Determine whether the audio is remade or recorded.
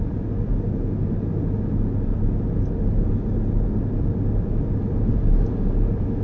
recorded